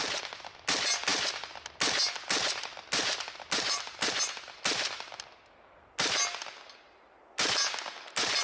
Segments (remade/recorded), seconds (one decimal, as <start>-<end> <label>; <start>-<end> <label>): 0.0-8.4 recorded